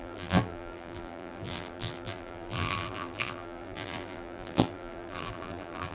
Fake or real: fake